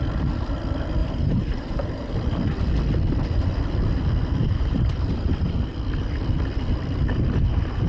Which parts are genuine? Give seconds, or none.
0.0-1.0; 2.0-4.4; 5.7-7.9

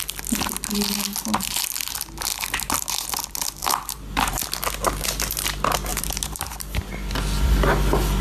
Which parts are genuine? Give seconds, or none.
0.0-3.6; 4.4-5.9; 6.9-8.2

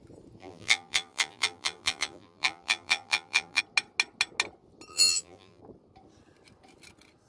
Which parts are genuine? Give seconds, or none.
0.0-0.4; 3.6-4.9; 5.6-7.3

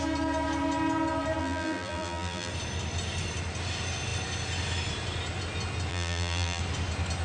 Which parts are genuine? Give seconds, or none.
0.0-1.4; 2.5-5.9; 6.6-7.2

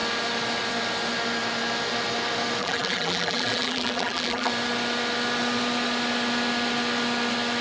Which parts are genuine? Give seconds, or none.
0.0-2.6; 4.5-7.6